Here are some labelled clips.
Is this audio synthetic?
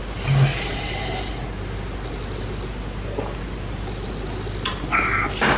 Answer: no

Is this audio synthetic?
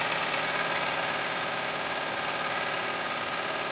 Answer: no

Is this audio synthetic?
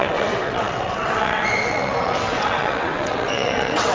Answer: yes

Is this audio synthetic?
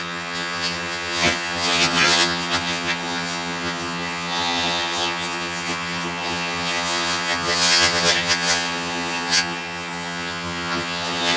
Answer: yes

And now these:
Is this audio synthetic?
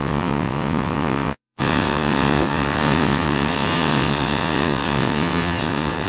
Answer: yes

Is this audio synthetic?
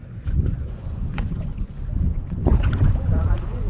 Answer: yes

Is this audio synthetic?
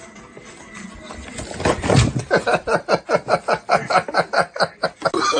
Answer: no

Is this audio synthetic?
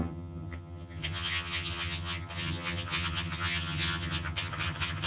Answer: yes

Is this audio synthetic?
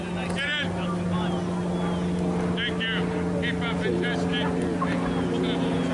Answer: no